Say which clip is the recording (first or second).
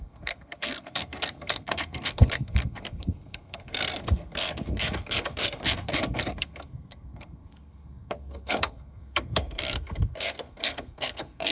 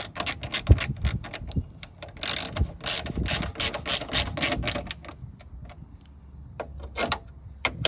second